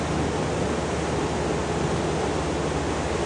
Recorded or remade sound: recorded